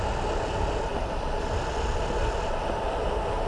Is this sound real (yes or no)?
yes